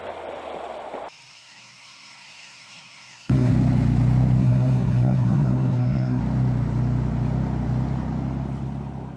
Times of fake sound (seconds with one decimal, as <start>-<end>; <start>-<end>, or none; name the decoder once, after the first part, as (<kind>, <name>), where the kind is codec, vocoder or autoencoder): 1.3-3.5 (codec, SNAC); 4.4-6.2